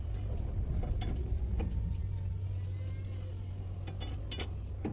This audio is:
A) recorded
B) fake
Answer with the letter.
A